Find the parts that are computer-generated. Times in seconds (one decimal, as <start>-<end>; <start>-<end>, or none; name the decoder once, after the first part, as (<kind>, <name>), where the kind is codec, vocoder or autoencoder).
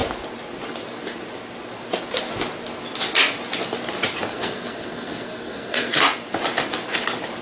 4.3-6.0 (codec, SNAC)